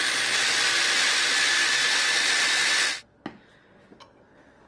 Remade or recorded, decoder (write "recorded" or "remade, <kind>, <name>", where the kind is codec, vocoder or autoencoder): recorded